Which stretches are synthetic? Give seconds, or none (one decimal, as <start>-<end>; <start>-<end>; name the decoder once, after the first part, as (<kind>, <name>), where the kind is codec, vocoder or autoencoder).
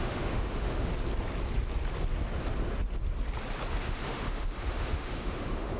0.0-0.9 (autoencoder, DAC-VAE); 3.8-5.8